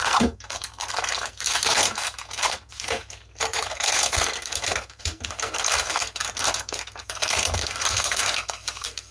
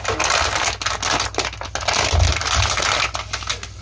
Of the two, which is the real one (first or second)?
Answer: second